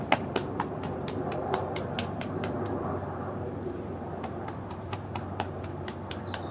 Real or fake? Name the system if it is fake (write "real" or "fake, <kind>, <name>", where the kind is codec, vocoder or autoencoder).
fake, vocoder, BigVGAN v2